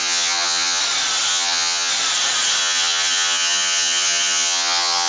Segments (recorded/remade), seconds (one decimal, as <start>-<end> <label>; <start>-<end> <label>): 0.0-0.8 remade; 0.8-1.3 recorded; 1.3-1.9 remade; 1.9-2.6 recorded; 2.6-5.1 remade